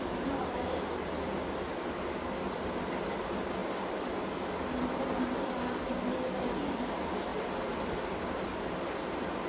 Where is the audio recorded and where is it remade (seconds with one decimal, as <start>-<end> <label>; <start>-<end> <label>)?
0.0-9.5 recorded